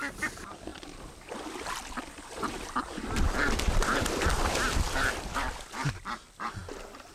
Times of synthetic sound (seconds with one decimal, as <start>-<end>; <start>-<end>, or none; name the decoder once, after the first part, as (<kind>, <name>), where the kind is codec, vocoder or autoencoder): 0.0-0.7 (vocoder, BigVGAN v2); 1.3-6.6